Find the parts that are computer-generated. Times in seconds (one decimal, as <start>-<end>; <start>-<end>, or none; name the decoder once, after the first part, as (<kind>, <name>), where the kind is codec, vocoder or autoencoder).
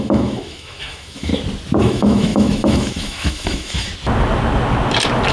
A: 0.0-1.3 (autoencoder, DAC-VAE); 1.8-3.9